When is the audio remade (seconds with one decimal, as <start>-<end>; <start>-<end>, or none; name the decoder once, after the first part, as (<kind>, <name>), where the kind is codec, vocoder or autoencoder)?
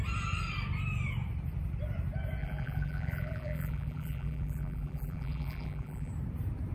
2.4-6.1 (vocoder, BigVGAN v2)